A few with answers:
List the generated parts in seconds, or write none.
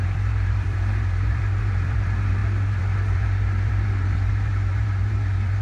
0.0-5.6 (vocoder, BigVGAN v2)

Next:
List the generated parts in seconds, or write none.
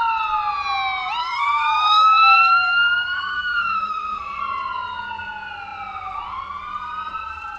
1.2-4.4 (codec, SNAC)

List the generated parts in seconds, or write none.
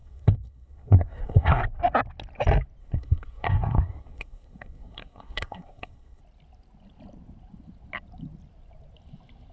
0.0-1.6 (codec, SNAC); 2.8-6.2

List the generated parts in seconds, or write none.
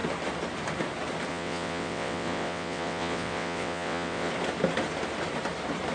1.3-4.3 (vocoder, WaveNeXt)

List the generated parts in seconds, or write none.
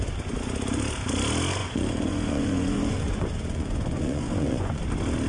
1.6-4.8 (vocoder, Vocos)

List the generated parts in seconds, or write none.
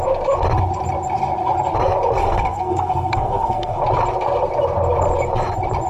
2.2-3.8 (codec, SNAC)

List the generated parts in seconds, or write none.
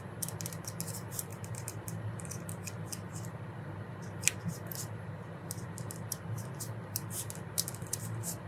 none